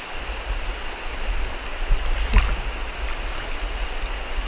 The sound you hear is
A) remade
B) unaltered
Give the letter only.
B